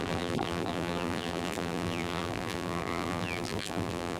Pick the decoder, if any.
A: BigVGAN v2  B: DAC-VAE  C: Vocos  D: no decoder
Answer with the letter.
A